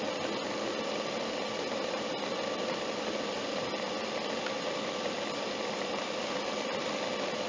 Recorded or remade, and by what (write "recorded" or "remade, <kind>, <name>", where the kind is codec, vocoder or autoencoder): recorded